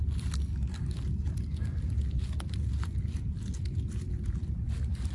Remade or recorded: recorded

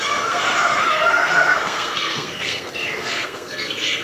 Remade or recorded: remade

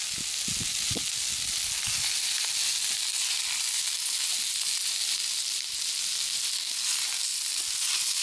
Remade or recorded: recorded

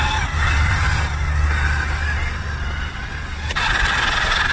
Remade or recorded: recorded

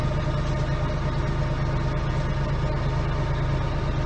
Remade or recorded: recorded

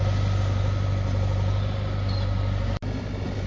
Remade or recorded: recorded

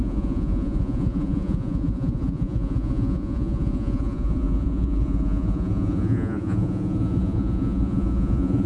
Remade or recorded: remade